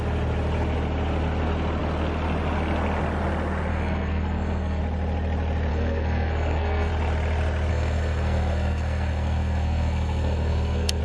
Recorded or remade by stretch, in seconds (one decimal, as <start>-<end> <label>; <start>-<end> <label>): 0.0-3.7 recorded; 3.7-4.8 remade; 4.8-5.7 recorded; 5.7-6.9 remade; 6.9-7.7 recorded; 7.7-11.0 remade